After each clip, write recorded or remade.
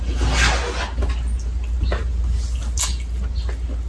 recorded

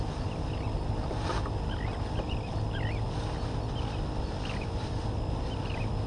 recorded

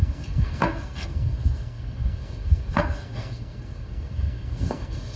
remade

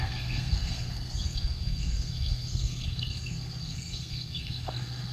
remade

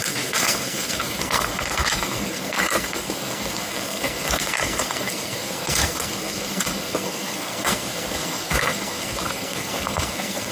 remade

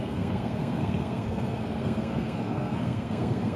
remade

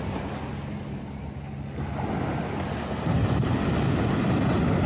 recorded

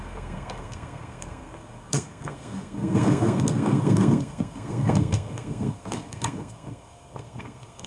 remade